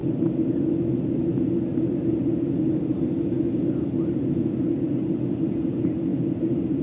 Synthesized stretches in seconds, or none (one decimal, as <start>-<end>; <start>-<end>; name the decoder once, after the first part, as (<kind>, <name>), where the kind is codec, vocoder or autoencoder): none